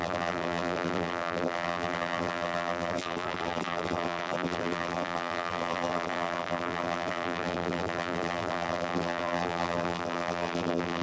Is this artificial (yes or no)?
yes